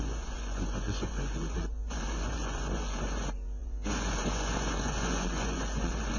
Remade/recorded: remade